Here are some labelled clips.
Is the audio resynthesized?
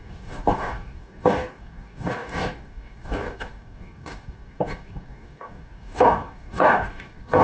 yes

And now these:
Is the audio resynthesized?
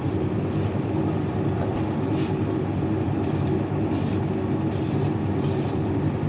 no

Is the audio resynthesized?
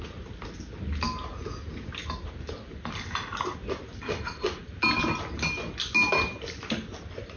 no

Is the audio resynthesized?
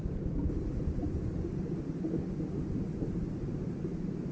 no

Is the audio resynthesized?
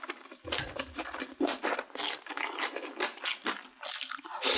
no